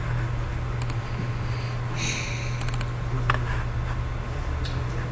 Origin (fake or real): real